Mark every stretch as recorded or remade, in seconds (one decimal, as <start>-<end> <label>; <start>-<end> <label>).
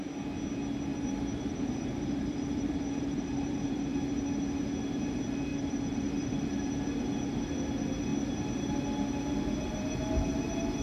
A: 0.0-0.9 recorded; 0.9-3.9 remade; 3.9-5.5 recorded; 5.5-6.4 remade; 6.4-10.8 recorded